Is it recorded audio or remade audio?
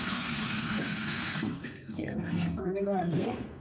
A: remade